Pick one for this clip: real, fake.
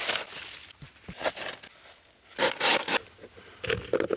real